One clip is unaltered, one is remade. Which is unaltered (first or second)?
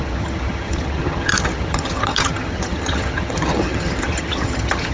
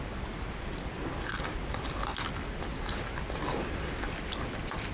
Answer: second